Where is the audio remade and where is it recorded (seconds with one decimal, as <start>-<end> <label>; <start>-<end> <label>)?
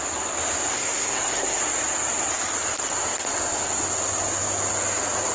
0.0-0.7 recorded; 0.7-1.6 remade; 1.6-5.3 recorded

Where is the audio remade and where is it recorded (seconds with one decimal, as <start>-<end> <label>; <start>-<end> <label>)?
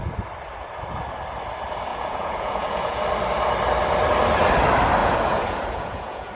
0.0-1.9 recorded; 1.9-3.0 remade; 3.0-5.0 recorded; 5.0-6.3 remade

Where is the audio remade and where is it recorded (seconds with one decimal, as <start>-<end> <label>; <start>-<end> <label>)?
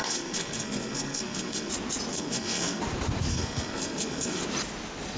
0.0-1.7 remade; 1.7-2.1 recorded; 2.1-2.8 remade; 2.8-3.3 recorded; 3.3-4.4 remade; 4.4-5.2 recorded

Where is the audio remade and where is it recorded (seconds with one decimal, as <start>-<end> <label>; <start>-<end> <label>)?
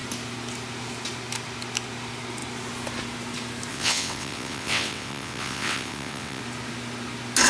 0.0-3.7 recorded; 3.7-6.4 remade; 6.4-7.5 recorded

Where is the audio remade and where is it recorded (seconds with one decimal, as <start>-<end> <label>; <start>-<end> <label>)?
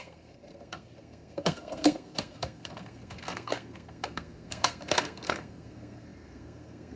0.0-7.0 remade